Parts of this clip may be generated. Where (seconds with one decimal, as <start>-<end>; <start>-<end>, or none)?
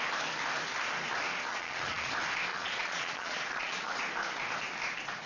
1.5-2.1; 2.5-4.0